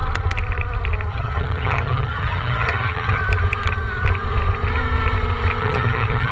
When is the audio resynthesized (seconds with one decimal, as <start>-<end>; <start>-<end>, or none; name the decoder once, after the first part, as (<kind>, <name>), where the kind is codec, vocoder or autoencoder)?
1.1-3.2 (vocoder, HiFi-GAN); 5.6-6.3